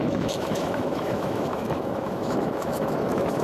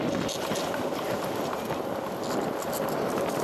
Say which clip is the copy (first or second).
first